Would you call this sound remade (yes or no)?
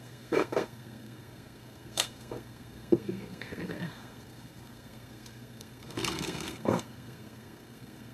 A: yes